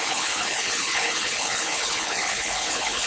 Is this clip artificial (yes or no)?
yes